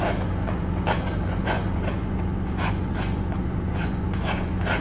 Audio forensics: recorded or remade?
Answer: remade